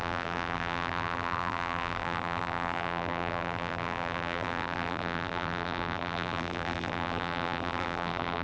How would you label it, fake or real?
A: fake